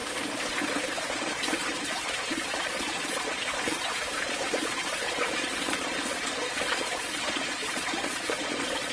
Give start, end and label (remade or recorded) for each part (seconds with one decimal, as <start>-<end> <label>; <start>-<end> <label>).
0.0-1.0 recorded; 1.0-8.9 remade